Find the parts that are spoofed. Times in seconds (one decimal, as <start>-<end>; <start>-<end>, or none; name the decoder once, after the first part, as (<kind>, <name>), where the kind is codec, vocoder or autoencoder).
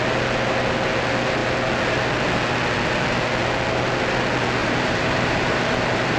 4.6-6.2 (vocoder, BigVGAN v2)